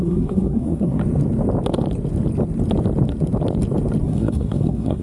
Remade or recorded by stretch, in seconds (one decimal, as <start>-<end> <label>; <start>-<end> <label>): 0.0-1.0 remade; 1.0-4.0 recorded; 4.0-5.0 remade